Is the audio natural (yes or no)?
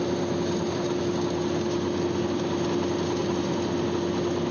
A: yes